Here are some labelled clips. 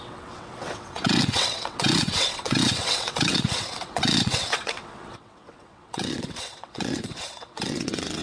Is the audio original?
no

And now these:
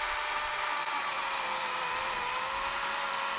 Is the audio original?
yes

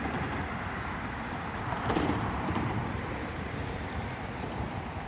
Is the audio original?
no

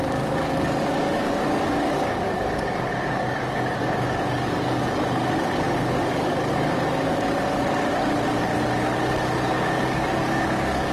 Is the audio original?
no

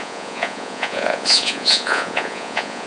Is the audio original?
no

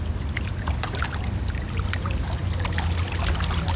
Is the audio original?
yes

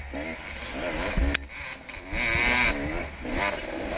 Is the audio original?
yes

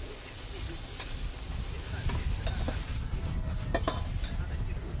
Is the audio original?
yes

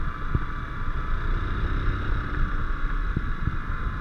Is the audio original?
yes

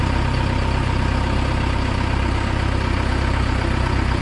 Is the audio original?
yes